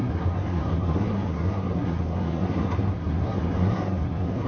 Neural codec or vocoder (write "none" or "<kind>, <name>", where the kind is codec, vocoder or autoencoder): codec, SNAC